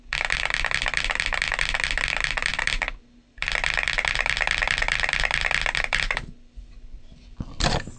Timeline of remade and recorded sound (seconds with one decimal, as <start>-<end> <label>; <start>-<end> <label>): 0.0-8.0 recorded